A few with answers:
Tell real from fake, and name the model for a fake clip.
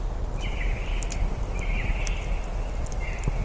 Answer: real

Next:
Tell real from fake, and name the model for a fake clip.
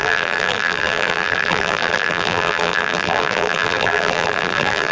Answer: fake, vocoder, BigVGAN v2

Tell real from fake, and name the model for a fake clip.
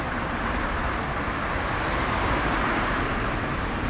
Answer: fake, vocoder, BigVGAN v2